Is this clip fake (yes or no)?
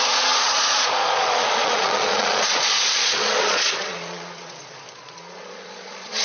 yes